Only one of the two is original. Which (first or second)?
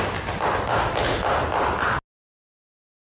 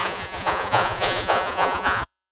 first